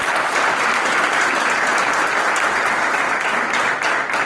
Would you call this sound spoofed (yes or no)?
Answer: yes